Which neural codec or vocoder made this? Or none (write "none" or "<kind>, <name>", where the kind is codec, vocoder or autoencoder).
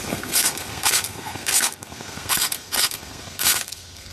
codec, SNAC